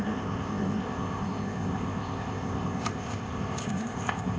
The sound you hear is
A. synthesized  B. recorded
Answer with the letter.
A